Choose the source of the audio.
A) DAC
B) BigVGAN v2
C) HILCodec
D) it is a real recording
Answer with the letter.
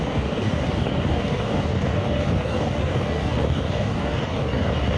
A